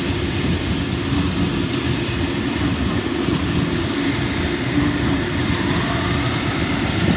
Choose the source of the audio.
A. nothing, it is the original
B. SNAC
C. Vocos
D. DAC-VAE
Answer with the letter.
A